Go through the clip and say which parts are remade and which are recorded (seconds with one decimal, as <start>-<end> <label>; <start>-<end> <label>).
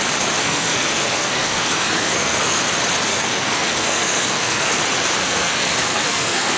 0.0-0.4 recorded; 0.4-2.6 remade; 2.6-3.1 recorded; 3.1-4.8 remade; 4.8-5.2 recorded; 5.2-6.6 remade